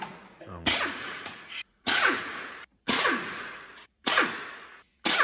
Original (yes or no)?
no